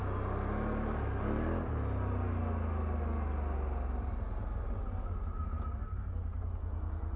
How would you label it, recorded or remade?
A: recorded